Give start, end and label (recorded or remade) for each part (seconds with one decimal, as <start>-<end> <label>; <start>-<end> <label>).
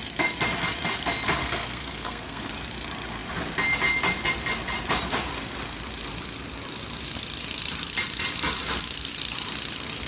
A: 0.0-1.4 recorded; 1.4-2.5 remade; 2.5-10.1 recorded